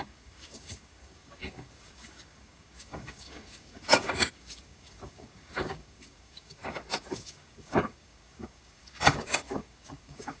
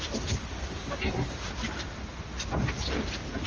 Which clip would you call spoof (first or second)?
first